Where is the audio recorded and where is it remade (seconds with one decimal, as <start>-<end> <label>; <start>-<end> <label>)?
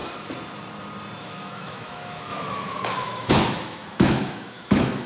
0.0-1.2 recorded; 1.2-5.1 remade